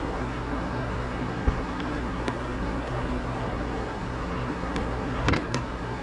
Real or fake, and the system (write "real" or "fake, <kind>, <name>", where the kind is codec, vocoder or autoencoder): fake, codec, SNAC